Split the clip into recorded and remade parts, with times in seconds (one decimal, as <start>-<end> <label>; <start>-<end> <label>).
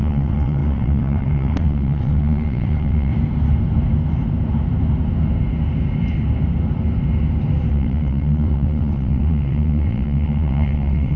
0.0-3.1 remade; 3.1-7.7 recorded; 7.7-11.2 remade